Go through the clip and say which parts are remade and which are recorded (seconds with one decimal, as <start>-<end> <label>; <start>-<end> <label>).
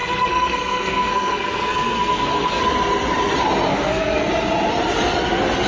0.0-2.6 remade; 2.6-3.7 recorded; 3.7-4.3 remade; 4.3-5.7 recorded